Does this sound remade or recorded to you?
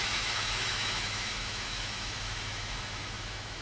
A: remade